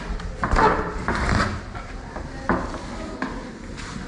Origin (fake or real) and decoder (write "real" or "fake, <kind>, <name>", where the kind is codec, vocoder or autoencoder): real